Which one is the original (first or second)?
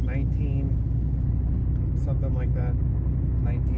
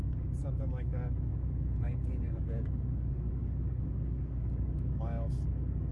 first